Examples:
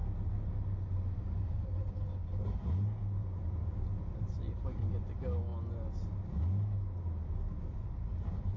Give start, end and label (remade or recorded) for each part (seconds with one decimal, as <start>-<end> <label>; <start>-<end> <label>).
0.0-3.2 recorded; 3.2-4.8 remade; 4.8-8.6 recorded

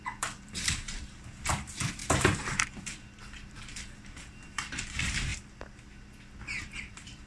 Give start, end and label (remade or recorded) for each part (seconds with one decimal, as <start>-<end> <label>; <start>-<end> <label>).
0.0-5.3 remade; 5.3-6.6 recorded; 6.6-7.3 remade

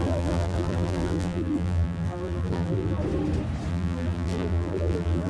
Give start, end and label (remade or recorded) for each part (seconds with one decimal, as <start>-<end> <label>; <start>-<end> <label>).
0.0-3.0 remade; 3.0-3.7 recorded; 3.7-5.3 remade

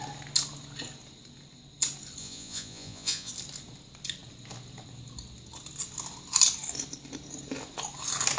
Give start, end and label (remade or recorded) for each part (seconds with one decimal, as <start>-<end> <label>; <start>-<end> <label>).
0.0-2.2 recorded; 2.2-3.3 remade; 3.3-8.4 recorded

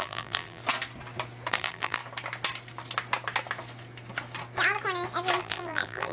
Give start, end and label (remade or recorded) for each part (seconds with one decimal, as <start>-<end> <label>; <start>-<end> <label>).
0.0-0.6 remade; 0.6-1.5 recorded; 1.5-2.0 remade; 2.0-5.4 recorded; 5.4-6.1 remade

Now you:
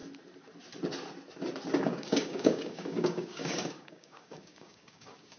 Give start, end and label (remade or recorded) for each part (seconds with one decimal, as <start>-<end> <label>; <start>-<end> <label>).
0.0-1.8 recorded; 1.8-5.4 remade

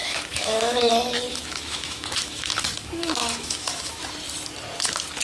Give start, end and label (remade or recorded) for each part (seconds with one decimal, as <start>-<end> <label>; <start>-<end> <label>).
0.0-0.9 remade; 0.9-1.3 recorded; 1.3-4.0 remade; 4.0-5.2 recorded

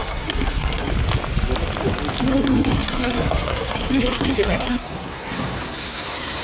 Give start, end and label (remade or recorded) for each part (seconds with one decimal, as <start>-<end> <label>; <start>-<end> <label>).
0.0-0.9 remade; 0.9-2.3 recorded; 2.3-6.4 remade